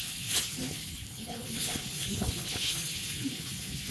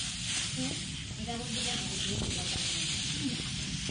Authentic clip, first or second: second